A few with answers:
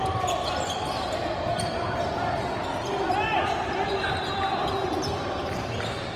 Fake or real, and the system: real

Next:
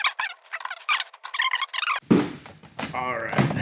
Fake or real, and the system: real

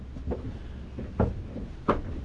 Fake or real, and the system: real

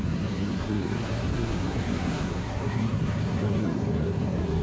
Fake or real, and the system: fake, codec, SNAC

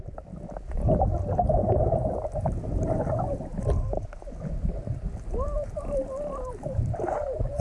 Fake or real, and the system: real